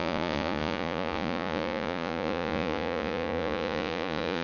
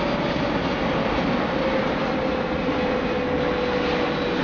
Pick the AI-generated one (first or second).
first